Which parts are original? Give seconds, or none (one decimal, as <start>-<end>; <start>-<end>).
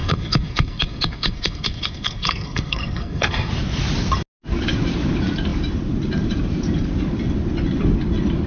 3.5-8.5